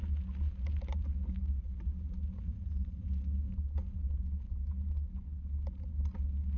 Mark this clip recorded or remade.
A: recorded